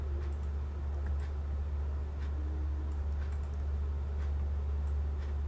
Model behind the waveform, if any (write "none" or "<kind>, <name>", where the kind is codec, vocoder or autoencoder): none